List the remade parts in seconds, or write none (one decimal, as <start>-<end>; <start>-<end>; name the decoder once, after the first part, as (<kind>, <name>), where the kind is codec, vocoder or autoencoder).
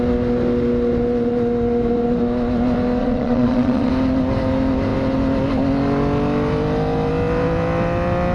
3.0-3.9 (vocoder, Vocos)